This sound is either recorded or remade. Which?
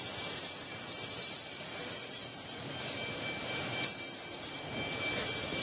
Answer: recorded